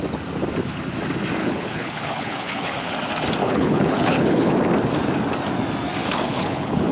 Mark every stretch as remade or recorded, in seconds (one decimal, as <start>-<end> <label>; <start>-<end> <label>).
0.0-1.4 recorded; 1.4-2.9 remade; 2.9-3.4 recorded; 3.4-4.5 remade; 4.5-6.0 recorded; 6.0-6.9 remade